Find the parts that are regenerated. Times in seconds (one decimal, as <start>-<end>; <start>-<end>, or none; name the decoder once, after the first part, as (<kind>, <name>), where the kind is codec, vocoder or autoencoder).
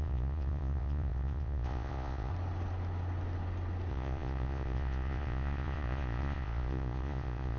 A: 0.0-2.3 (vocoder, Vocos); 3.9-7.6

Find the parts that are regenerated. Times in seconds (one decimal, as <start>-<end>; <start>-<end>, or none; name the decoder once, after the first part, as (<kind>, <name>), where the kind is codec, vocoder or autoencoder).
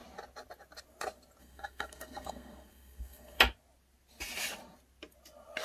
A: 1.4-3.4 (codec, SNAC)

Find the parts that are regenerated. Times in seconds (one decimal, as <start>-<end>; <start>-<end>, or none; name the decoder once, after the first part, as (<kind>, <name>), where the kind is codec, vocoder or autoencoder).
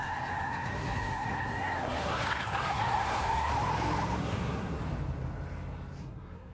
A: 0.0-3.5 (codec, SNAC); 4.2-4.8; 6.0-6.5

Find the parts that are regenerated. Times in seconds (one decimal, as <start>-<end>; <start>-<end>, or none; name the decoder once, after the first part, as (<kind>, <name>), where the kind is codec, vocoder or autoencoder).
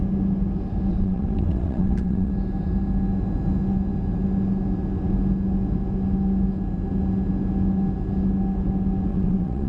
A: 0.9-2.3 (vocoder, WaveNeXt); 9.1-9.7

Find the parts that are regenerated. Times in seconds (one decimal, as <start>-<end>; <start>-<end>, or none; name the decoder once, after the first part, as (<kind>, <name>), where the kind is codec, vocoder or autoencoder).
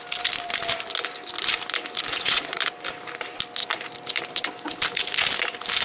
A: 2.1-2.6 (vocoder, WaveNeXt)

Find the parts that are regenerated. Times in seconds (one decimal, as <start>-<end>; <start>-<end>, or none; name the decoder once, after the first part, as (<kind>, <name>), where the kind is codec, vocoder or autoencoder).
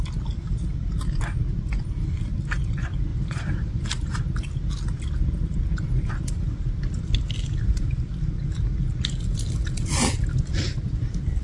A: 3.1-4.2 (vocoder, BigVGAN v2)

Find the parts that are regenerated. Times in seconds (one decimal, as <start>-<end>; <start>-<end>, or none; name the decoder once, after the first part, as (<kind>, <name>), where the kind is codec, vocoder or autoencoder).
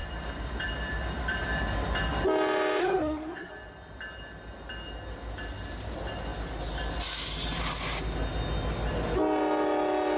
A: 2.8-3.5 (codec, SNAC)